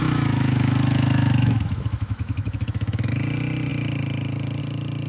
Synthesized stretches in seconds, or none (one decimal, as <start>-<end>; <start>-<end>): 0.0-3.1